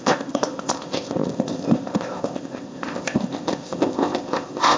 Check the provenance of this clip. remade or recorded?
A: remade